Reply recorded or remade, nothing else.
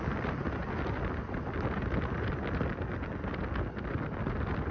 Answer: recorded